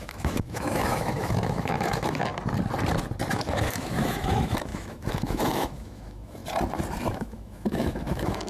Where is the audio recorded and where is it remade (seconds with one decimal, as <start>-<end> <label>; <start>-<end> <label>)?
0.0-2.3 remade; 2.3-3.3 recorded; 3.3-6.4 remade; 6.4-7.1 recorded; 7.1-8.5 remade